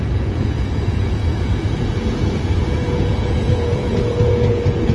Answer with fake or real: fake